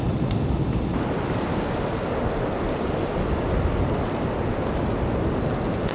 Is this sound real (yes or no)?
yes